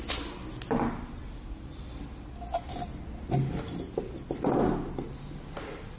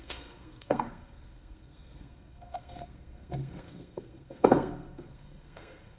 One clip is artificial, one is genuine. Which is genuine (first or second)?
first